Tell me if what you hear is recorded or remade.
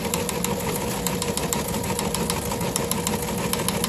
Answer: recorded